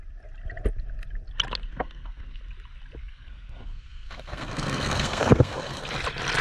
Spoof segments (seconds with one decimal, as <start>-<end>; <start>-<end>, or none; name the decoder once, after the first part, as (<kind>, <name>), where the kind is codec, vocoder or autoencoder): 1.7-2.4 (codec, SNAC); 3.0-5.8